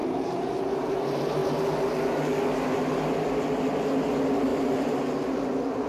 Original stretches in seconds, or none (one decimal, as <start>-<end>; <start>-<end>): 0.5-4.5; 5.0-5.9